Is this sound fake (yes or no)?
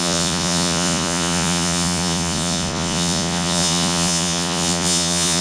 yes